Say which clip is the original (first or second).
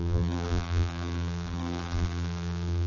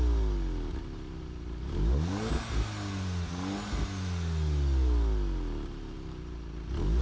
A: second